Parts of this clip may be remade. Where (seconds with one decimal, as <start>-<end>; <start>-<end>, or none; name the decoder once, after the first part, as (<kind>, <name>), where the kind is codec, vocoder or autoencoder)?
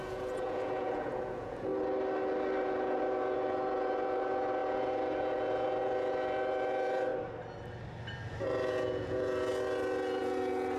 0.0-1.7 (vocoder, Vocos); 2.6-7.1; 8.3-9.5; 10.2-10.8